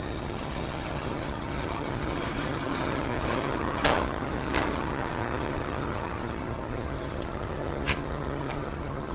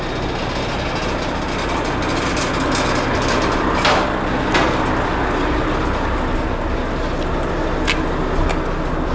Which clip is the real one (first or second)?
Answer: second